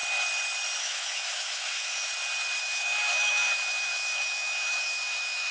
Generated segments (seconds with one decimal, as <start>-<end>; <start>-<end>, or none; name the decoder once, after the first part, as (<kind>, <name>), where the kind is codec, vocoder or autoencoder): 0.8-2.1 (autoencoder, DAC-VAE); 2.6-5.5